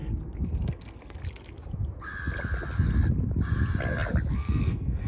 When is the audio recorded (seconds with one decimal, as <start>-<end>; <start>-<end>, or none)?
1.2-4.3